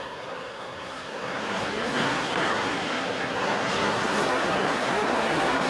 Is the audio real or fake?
fake